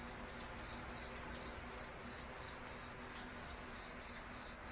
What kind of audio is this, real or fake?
real